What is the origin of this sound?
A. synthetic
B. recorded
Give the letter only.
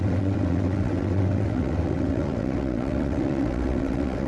A